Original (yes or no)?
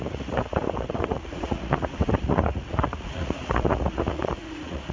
no